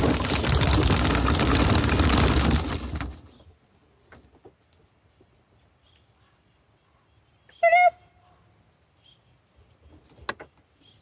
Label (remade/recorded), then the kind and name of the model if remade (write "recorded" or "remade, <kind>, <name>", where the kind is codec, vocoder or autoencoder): recorded